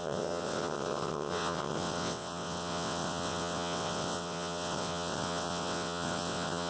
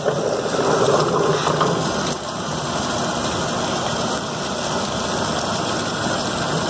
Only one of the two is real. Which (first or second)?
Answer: second